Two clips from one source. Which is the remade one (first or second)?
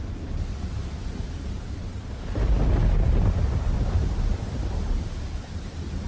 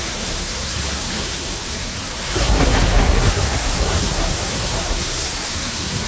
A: second